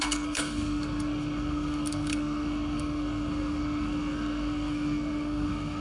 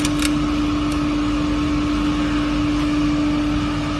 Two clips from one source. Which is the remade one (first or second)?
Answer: first